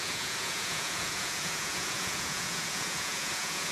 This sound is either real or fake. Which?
fake